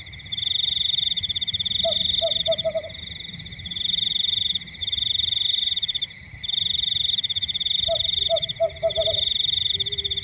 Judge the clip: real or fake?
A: real